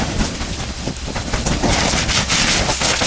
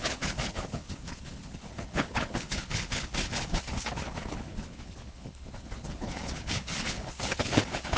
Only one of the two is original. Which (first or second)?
first